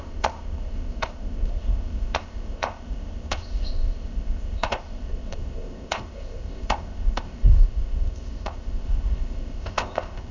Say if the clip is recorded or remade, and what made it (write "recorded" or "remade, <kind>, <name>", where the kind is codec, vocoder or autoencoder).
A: remade, codec, ZipCodec